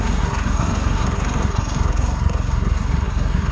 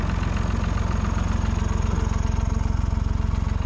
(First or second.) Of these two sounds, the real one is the second